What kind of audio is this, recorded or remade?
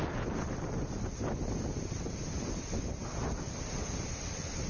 recorded